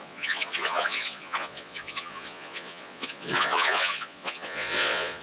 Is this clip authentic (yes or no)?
no